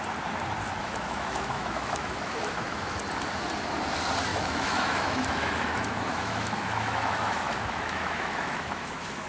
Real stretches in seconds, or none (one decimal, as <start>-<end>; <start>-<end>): 0.0-0.8; 3.0-4.3